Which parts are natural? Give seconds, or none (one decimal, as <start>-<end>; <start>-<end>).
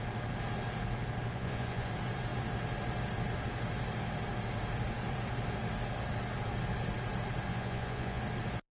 0.0-1.3; 1.9-7.5; 8.2-8.8